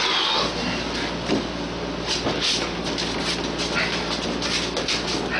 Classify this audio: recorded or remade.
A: recorded